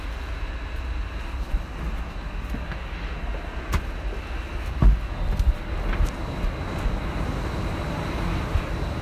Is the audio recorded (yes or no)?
yes